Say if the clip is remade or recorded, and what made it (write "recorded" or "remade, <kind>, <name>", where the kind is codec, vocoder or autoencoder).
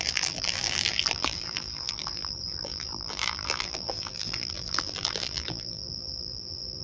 remade, vocoder, BigVGAN v2